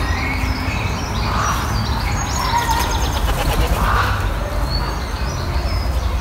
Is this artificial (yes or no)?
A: no